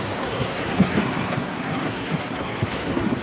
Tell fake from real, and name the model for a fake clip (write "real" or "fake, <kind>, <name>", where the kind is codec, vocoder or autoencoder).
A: fake, codec, SNAC